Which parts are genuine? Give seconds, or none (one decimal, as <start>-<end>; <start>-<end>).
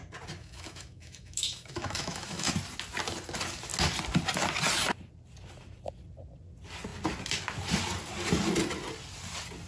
0.0-0.4; 2.5-9.7